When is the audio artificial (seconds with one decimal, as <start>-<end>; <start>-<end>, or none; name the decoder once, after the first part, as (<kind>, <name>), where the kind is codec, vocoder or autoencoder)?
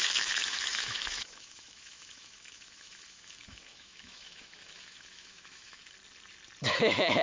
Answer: 0.0-5.8 (autoencoder, DAC-VAE); 6.7-7.2